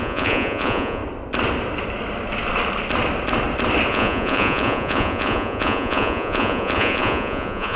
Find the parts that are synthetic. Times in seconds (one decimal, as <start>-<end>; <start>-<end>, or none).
0.0-1.0; 3.9-7.8